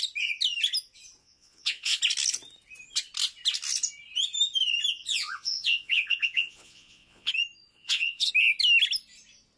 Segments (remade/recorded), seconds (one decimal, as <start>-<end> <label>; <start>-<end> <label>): 0.0-1.2 recorded; 1.2-2.0 remade; 2.0-5.0 recorded; 5.0-7.3 remade; 7.3-7.7 recorded; 7.7-8.3 remade; 8.3-9.6 recorded